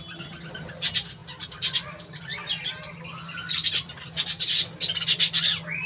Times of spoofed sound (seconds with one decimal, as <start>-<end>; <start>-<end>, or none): none